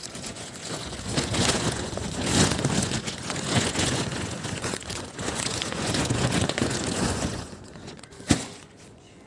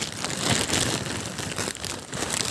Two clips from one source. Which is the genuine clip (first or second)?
second